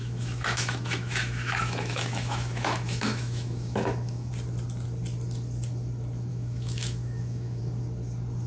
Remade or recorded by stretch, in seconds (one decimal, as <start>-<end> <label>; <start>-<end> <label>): 0.0-4.3 remade; 4.3-6.3 recorded; 6.3-7.6 remade; 7.6-8.5 recorded